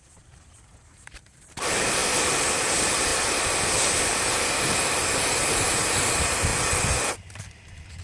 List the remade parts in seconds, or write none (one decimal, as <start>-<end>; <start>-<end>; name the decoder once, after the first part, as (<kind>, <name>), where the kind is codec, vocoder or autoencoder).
0.0-6.5 (vocoder, BigVGAN v2); 7.1-8.0

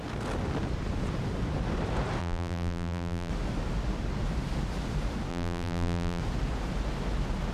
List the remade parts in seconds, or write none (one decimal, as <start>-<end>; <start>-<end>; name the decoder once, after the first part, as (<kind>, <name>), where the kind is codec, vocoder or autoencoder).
2.2-3.3 (vocoder, BigVGAN v2); 5.3-6.2

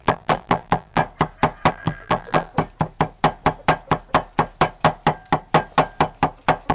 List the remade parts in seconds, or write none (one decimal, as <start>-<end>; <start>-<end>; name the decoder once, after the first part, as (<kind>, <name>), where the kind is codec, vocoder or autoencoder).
0.0-1.0 (vocoder, BigVGAN v2); 1.7-2.5

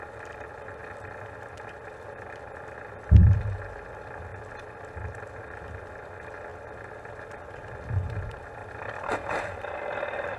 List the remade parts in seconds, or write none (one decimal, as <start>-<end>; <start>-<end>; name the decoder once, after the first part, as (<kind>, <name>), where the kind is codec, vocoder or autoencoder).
0.0-0.8 (vocoder, BigVGAN v2); 1.7-4.3; 5.2-8.6; 9.3-10.4

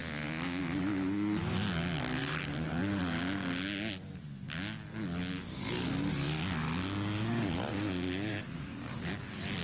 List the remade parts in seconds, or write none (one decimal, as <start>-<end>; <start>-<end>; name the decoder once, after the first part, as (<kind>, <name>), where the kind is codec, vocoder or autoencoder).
2.2-3.0 (vocoder, BigVGAN v2); 8.3-9.1